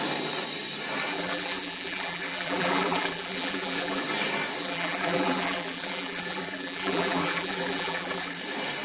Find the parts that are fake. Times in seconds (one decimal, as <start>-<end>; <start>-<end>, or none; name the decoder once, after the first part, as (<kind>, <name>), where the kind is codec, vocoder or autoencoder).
1.1-4.0 (vocoder, BigVGAN v2); 4.6-8.4